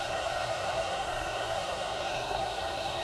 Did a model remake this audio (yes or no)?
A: yes